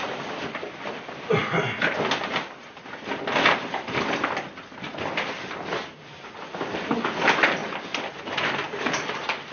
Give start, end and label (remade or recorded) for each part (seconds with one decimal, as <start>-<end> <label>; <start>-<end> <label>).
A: 0.0-9.5 recorded

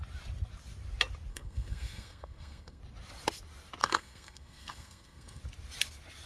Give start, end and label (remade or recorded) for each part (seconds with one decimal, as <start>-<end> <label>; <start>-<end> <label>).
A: 0.0-1.3 recorded; 1.3-2.8 remade; 2.8-3.8 recorded; 3.8-5.4 remade; 5.4-6.3 recorded

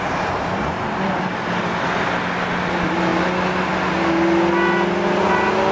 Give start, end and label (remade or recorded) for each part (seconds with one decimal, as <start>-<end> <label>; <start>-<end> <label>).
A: 0.0-5.7 recorded

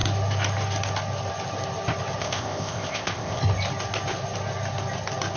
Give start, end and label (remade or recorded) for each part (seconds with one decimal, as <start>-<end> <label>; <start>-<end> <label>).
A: 0.0-2.2 recorded; 2.2-3.4 remade; 3.4-5.4 recorded

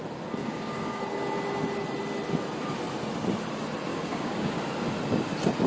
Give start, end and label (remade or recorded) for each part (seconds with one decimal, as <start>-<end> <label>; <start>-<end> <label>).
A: 0.0-0.4 recorded; 0.4-1.0 remade; 1.0-3.9 recorded; 3.9-4.6 remade; 4.6-5.7 recorded